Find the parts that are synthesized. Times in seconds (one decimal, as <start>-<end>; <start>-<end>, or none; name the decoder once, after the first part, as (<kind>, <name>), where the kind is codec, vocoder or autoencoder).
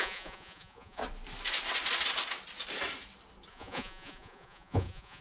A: 0.0-1.0 (vocoder, Vocos); 3.5-5.2